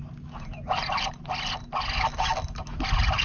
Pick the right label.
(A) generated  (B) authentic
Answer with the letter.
B